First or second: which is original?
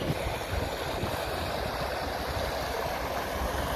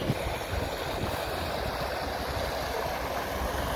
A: second